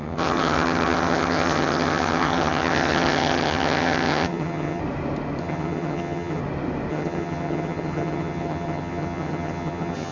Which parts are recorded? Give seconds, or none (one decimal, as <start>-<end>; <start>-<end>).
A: 4.8-5.4; 6.4-6.9

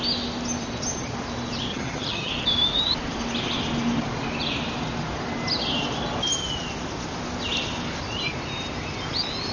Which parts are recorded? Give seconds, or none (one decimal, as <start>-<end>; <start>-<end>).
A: 0.0-1.7; 2.3-9.5

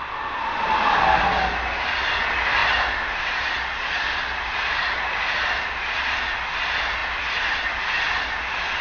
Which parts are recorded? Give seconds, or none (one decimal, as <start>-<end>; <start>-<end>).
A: 0.0-8.8

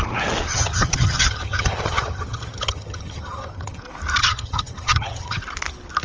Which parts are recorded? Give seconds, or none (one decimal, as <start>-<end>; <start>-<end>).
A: 0.0-0.5; 3.8-4.2; 5.4-6.0

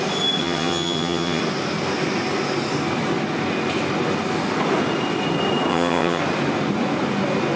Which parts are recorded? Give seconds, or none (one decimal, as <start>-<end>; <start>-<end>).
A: 0.0-0.4; 1.4-5.7; 6.2-7.6

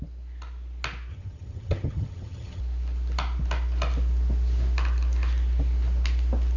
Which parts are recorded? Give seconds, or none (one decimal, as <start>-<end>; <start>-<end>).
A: 0.0-1.1; 2.6-6.6